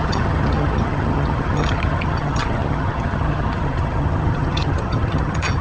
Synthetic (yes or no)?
yes